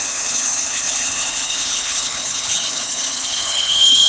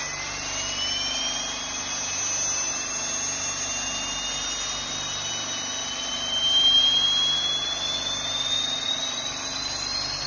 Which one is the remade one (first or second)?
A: first